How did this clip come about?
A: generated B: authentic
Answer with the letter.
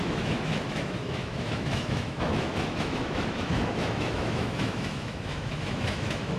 A